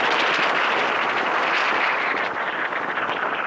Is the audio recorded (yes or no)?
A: yes